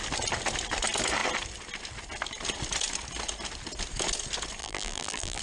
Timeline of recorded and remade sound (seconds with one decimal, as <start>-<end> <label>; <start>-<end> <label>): 0.0-4.6 recorded; 4.6-5.4 remade